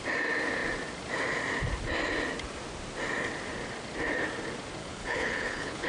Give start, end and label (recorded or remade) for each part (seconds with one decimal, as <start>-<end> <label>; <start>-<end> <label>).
0.0-4.8 recorded; 4.8-5.9 remade